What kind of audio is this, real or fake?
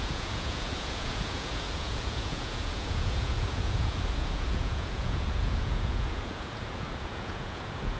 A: fake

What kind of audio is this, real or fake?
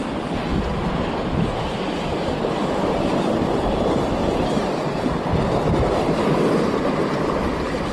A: real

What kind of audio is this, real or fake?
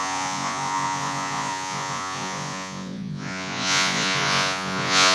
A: fake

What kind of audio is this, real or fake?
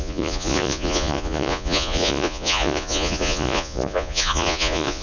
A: fake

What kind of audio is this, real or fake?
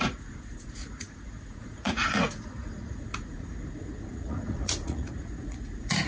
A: fake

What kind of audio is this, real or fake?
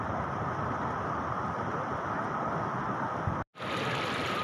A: real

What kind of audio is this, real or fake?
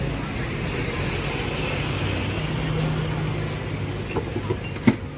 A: real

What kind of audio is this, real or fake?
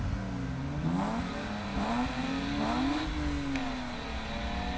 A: real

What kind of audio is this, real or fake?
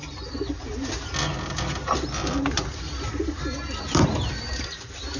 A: real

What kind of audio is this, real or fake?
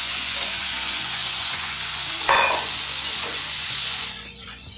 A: fake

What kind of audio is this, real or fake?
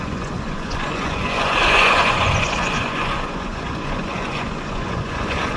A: fake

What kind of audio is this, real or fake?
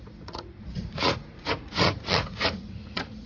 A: fake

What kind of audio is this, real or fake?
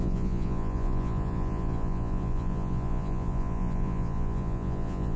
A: fake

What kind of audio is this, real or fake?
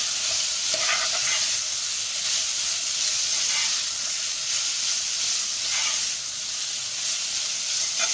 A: real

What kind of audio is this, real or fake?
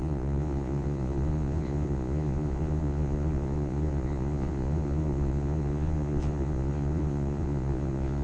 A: fake